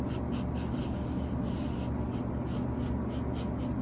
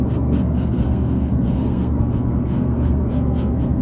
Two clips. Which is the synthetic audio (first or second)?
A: second